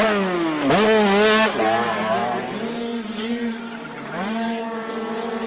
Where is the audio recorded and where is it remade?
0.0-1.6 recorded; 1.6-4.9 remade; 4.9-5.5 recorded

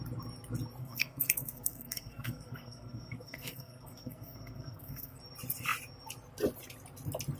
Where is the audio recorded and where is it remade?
0.0-0.8 recorded; 0.8-5.2 remade; 5.2-7.4 recorded

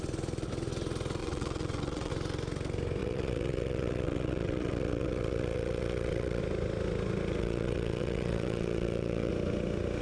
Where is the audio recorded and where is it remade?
0.0-1.2 recorded; 1.2-2.1 remade; 2.1-3.0 recorded; 3.0-6.4 remade; 6.4-7.4 recorded; 7.4-9.3 remade; 9.3-10.0 recorded

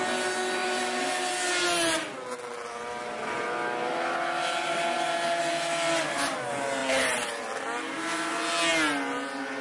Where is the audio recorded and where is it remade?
0.0-9.6 recorded

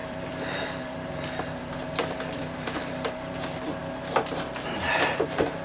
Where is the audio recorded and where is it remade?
0.0-3.4 remade; 3.4-5.6 recorded

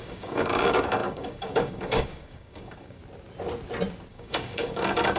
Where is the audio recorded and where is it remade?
0.0-3.0 remade; 3.0-4.1 recorded; 4.1-5.2 remade

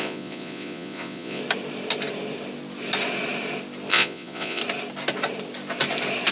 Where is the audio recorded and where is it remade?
0.0-1.4 remade; 1.4-3.9 recorded; 3.9-4.6 remade; 4.6-6.3 recorded

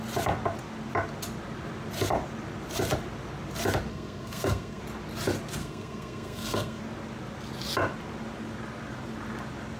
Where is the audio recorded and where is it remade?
0.0-3.9 recorded; 3.9-4.8 remade; 4.8-5.6 recorded; 5.6-6.8 remade; 6.8-9.8 recorded